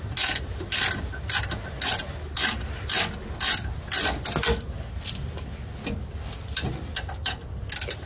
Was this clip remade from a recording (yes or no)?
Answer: no